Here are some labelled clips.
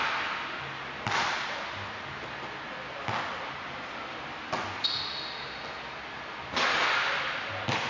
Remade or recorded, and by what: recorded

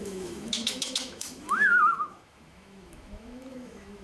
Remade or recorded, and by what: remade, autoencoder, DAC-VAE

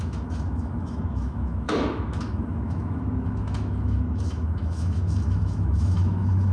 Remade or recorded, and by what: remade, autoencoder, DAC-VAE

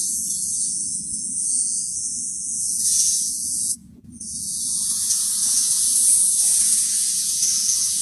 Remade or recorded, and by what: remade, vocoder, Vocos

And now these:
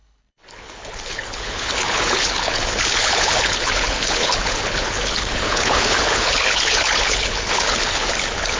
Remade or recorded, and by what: remade, codec, HILCodec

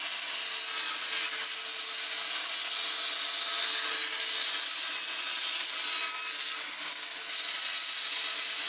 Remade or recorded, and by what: recorded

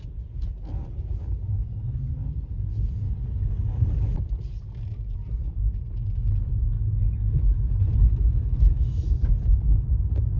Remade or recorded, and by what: recorded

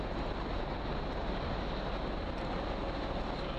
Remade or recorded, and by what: recorded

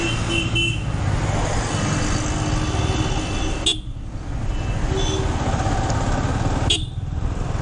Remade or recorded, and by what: recorded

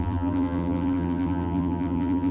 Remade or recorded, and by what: remade, vocoder, BigVGAN v2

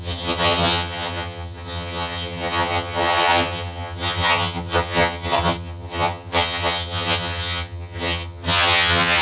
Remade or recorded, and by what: remade, vocoder, HiFi-GAN